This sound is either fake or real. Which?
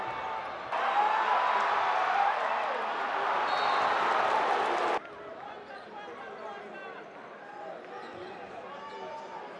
real